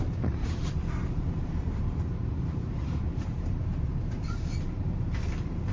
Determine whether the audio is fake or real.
fake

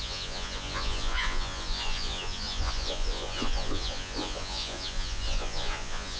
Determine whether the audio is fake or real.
fake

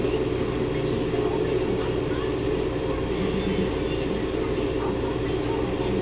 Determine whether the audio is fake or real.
real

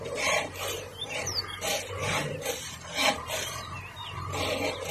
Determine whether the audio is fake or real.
fake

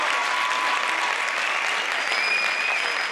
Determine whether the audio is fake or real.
real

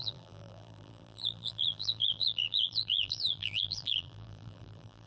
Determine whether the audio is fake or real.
fake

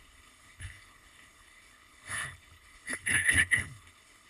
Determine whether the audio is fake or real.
fake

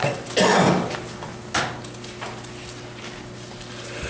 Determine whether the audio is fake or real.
real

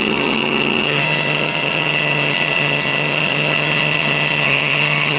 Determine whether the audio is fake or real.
fake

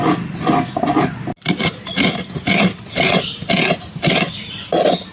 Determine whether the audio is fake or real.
real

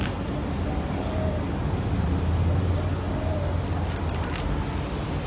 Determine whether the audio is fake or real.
real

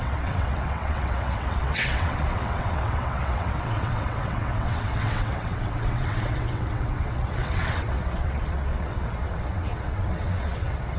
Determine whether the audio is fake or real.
fake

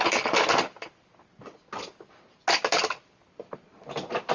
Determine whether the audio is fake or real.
real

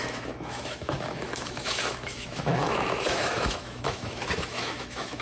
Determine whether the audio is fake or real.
fake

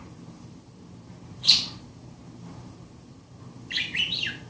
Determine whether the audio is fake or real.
fake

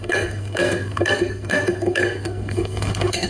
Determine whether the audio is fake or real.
fake